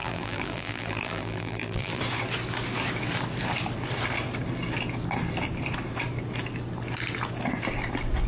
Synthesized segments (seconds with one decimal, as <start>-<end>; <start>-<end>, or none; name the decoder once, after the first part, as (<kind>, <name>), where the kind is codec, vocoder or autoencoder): 0.0-2.0 (vocoder, BigVGAN v2)